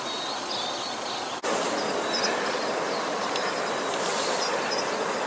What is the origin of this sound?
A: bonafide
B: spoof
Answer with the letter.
A